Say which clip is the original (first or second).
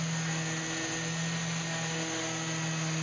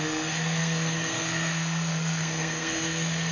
first